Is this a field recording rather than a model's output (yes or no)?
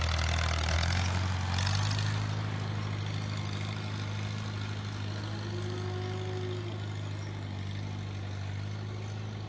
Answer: yes